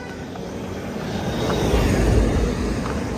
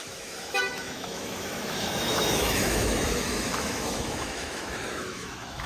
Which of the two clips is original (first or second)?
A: first